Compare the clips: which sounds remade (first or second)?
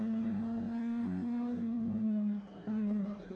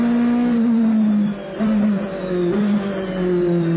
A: first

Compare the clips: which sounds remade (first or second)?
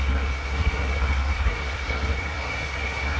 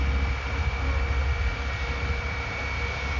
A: first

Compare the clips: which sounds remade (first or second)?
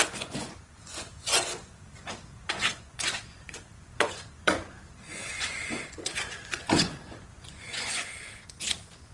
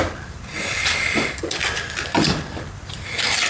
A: first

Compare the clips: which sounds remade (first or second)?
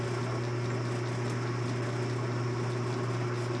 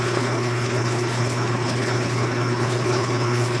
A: second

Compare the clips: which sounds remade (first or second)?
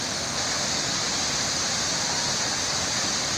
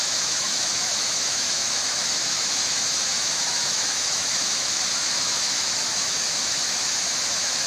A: second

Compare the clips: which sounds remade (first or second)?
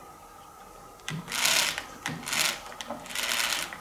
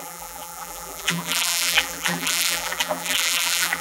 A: second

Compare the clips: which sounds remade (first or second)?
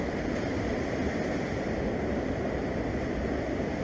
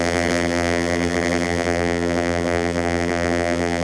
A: second